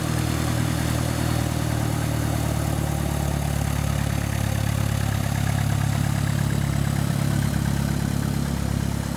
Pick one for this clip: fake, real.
real